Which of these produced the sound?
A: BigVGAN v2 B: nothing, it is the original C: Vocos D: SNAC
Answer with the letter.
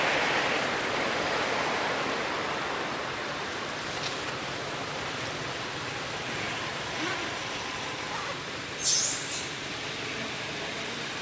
B